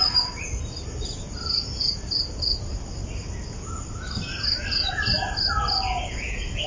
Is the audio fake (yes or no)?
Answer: no